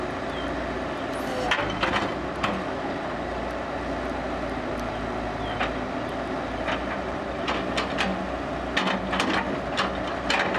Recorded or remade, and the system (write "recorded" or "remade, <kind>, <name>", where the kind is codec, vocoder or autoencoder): recorded